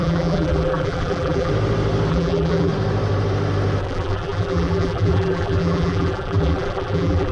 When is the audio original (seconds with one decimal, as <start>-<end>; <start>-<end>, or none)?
1.5-2.1; 2.7-3.8

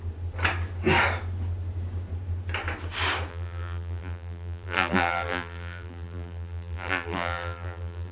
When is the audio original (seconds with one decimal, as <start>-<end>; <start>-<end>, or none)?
0.0-3.3

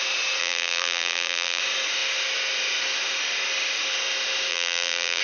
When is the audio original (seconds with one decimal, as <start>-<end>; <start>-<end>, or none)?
0.0-0.4; 1.6-4.5

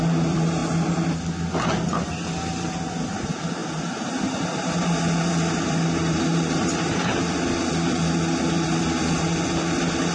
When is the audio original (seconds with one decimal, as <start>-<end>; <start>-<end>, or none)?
0.6-1.9

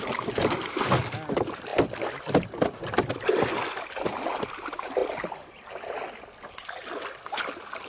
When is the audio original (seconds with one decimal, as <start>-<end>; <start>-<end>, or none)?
0.0-7.9

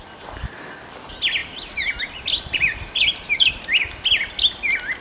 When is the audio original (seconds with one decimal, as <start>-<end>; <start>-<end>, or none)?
0.0-2.5; 3.6-5.0

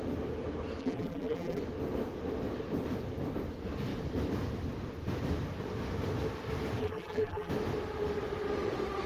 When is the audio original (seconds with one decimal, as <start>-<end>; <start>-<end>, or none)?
0.0-0.8; 1.6-6.8; 7.5-9.1

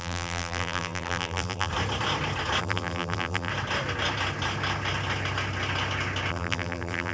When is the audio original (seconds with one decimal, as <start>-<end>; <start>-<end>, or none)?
1.7-2.6; 3.5-6.3